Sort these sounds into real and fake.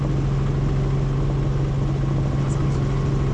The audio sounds real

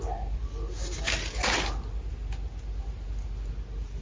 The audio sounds real